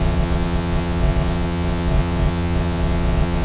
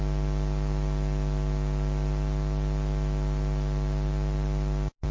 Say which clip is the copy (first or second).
first